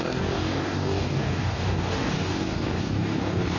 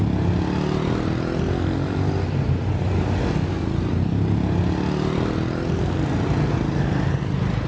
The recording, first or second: second